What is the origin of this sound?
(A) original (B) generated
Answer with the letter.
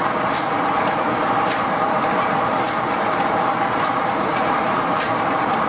B